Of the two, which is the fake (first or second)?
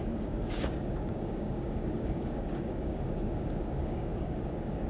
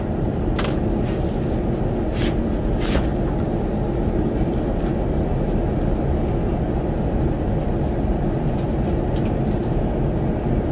first